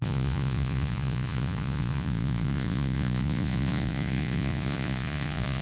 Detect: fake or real fake